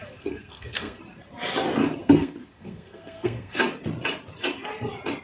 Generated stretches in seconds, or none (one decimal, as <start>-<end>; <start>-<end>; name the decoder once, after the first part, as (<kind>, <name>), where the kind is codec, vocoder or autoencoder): 0.0-1.0 (codec, SNAC); 2.0-3.6